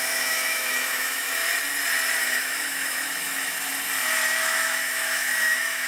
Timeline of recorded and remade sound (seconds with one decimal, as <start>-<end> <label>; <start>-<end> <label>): 0.0-1.4 remade; 1.4-2.2 recorded; 2.2-3.7 remade; 3.7-4.4 recorded; 4.4-5.9 remade